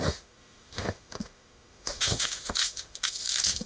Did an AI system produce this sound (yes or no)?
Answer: yes